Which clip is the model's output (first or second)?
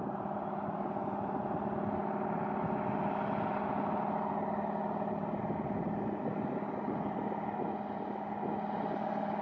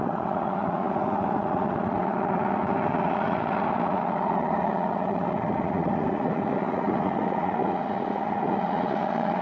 second